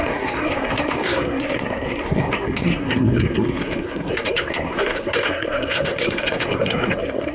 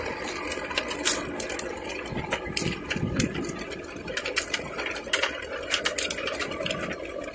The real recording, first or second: second